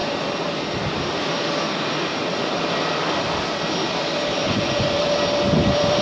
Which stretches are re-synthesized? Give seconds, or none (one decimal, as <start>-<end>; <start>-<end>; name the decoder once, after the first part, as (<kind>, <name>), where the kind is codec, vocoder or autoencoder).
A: 4.4-5.0 (vocoder, Vocos)